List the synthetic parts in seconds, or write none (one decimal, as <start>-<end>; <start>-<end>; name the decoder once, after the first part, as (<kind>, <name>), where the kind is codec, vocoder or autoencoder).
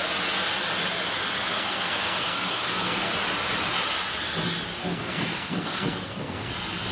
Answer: 1.5-3.1 (codec, SNAC); 4.8-6.5